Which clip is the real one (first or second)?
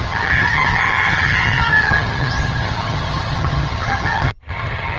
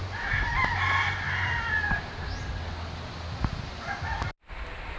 second